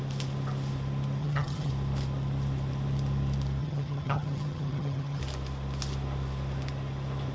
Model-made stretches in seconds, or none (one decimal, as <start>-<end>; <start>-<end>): 1.2-1.7; 3.6-5.2